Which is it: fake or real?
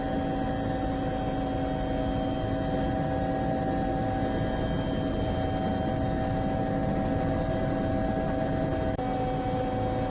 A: real